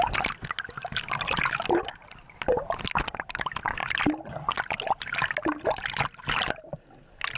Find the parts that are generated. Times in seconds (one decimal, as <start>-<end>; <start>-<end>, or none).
none